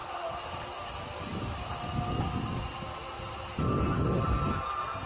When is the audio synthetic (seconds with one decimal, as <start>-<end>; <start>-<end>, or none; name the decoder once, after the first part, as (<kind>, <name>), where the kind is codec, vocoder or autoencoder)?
none